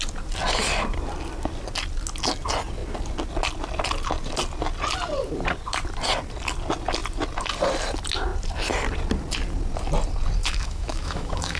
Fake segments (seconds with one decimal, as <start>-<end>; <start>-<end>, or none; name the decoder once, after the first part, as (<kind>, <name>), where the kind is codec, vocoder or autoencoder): 10.4-11.6 (autoencoder, DAC-VAE)